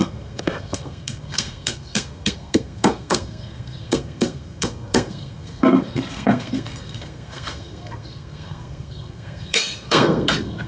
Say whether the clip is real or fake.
fake